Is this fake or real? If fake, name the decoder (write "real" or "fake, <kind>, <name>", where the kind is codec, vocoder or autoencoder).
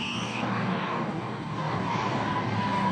fake, codec, DAC